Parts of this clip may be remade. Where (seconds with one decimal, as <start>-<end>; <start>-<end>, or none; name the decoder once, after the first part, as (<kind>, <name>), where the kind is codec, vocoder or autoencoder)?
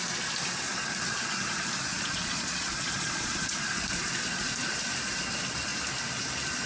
1.9-3.8 (vocoder, Vocos)